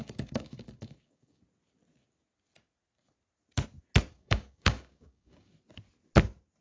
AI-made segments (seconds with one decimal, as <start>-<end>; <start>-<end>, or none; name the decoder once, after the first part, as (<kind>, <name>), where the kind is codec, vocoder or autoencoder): 0.0-1.4 (codec, DAC); 4.1-5.5